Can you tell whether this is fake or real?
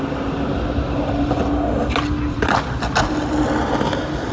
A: real